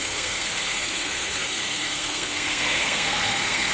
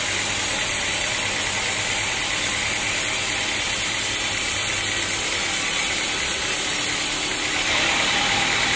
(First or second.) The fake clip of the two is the first